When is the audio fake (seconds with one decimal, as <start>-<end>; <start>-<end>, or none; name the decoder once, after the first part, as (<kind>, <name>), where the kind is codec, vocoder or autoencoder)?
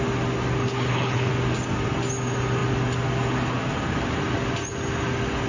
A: 0.6-1.3 (codec, HILCodec)